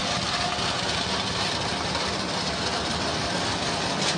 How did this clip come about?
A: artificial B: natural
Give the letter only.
B